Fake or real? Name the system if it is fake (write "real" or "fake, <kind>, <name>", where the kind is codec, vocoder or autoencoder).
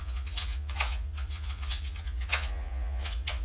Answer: fake, vocoder, Vocos